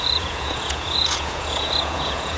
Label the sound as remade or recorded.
remade